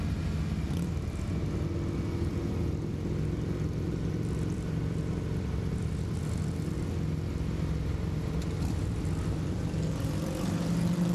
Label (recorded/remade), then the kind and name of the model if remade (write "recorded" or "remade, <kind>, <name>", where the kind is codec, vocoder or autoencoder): recorded